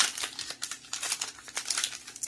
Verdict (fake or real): real